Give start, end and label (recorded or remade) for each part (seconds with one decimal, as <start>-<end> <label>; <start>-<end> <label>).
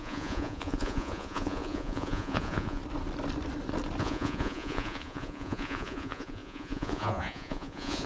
0.0-2.8 remade; 2.8-4.0 recorded; 4.0-8.1 remade